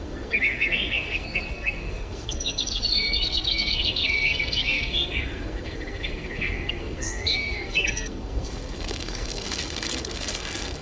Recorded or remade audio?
remade